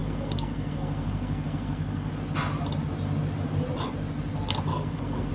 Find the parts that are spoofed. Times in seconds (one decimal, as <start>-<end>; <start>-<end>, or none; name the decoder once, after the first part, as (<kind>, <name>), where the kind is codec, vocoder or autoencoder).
0.0-2.1 (codec, SNAC); 4.7-5.3